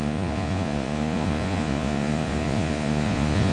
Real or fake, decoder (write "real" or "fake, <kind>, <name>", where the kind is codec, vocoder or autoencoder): fake, vocoder, Vocos